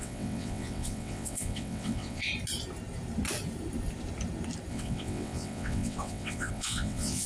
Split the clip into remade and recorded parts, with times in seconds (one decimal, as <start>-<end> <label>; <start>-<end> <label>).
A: 0.0-2.3 remade; 2.3-4.7 recorded; 4.7-7.3 remade